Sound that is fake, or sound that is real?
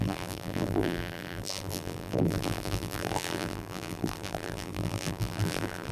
fake